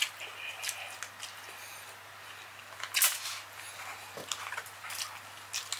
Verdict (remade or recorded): recorded